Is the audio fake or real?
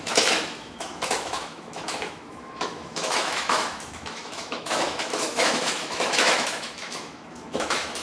fake